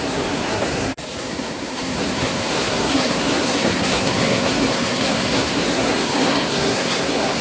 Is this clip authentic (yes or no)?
no